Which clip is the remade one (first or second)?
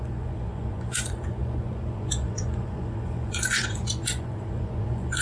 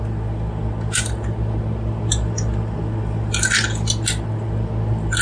first